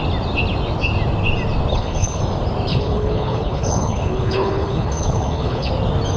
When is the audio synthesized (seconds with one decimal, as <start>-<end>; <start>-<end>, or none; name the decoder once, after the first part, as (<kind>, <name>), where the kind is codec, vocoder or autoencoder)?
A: 1.7-2.2 (codec, HILCodec); 2.7-5.7